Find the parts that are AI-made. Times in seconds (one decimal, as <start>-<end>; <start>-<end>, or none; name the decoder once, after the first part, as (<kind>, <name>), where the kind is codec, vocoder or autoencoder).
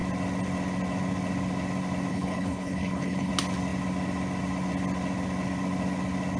2.1-3.3 (codec, HILCodec)